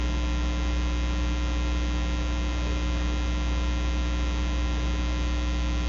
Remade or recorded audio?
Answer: recorded